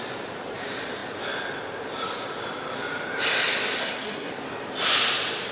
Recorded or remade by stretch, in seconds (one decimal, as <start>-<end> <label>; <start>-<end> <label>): 0.0-3.8 recorded; 3.8-4.3 remade; 4.3-5.5 recorded